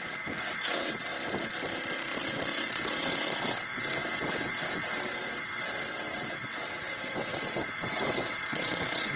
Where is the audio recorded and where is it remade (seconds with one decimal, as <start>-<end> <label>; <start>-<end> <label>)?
0.0-1.1 remade; 1.1-2.2 recorded; 2.2-9.2 remade